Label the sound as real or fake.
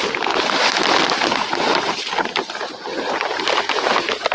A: real